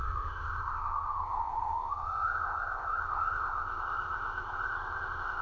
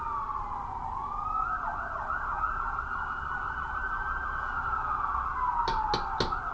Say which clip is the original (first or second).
second